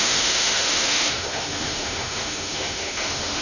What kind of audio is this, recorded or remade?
remade